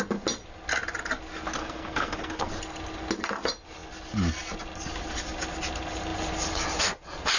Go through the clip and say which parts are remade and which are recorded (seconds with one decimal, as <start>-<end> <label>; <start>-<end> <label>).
0.0-1.6 recorded; 1.6-2.5 remade; 2.5-7.4 recorded